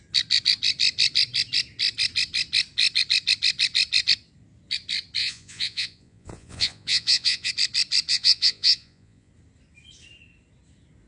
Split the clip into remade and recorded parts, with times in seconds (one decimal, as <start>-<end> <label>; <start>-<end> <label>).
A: 0.0-5.2 recorded; 5.2-7.5 remade; 7.5-8.1 recorded; 8.1-9.3 remade; 9.3-11.1 recorded